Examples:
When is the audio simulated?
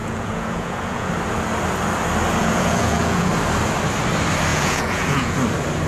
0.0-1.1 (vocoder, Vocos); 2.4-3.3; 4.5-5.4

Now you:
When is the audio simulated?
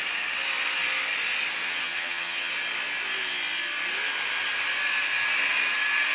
1.6-2.5 (vocoder, HiFi-GAN)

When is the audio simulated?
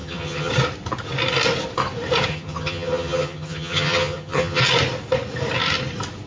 0.0-0.5 (vocoder, HiFi-GAN); 2.3-4.6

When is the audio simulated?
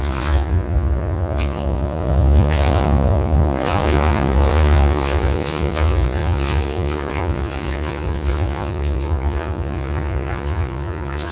0.0-11.3 (vocoder, Vocos)